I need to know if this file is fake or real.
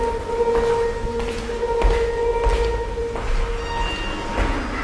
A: real